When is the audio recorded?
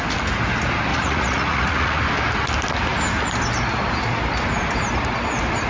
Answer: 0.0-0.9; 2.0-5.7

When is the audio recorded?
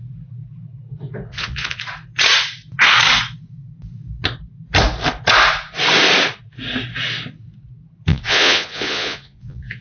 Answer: 0.0-1.3; 1.8-8.1